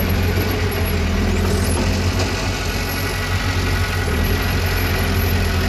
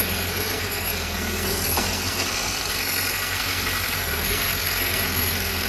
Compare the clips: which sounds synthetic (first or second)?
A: second